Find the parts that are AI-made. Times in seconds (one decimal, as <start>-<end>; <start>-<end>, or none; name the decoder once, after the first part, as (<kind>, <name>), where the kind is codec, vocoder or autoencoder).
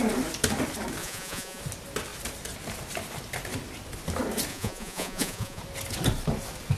1.0-1.6 (vocoder, Vocos); 4.5-5.6